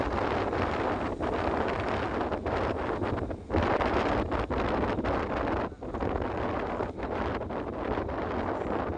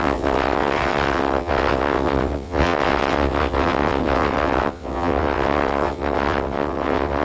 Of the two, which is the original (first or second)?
first